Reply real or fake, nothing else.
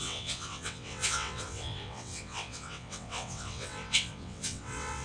fake